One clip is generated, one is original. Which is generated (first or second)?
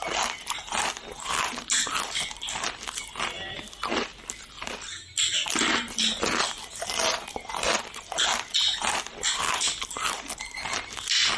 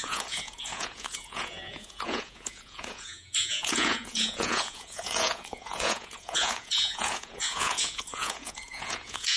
second